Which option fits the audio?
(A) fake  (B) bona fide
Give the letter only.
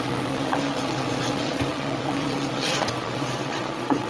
A